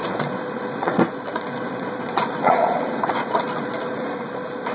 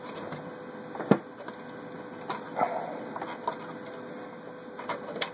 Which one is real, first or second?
second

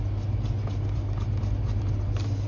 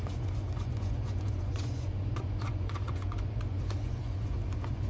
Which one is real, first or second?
first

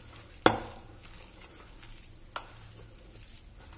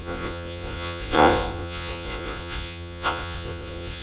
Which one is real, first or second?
first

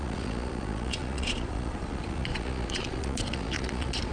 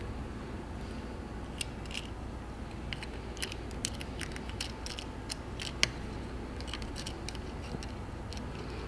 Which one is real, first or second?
second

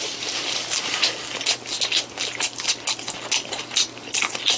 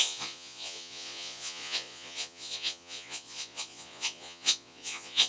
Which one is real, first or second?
first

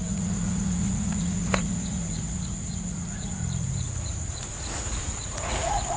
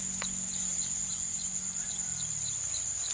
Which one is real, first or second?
second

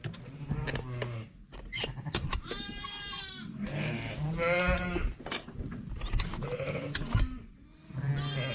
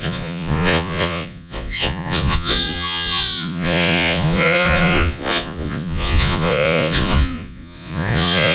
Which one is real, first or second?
first